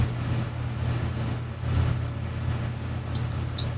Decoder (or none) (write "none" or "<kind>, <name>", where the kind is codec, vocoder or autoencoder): none